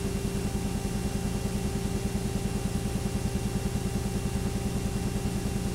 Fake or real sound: real